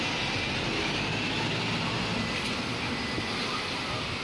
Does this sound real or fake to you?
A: real